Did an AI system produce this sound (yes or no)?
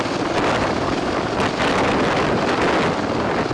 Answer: no